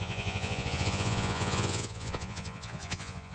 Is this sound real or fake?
fake